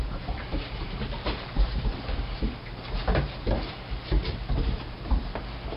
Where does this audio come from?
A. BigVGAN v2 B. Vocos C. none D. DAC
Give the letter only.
A